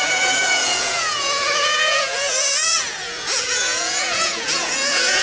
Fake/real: fake